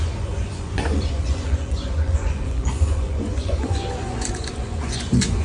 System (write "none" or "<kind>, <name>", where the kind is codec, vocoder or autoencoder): vocoder, Vocos